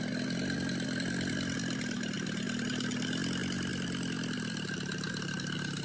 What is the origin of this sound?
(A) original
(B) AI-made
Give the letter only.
A